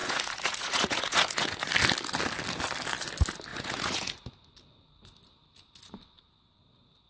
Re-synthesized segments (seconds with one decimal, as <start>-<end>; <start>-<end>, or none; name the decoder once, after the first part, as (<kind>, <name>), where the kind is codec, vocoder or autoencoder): 0.0-1.7 (vocoder, Vocos); 3.5-4.3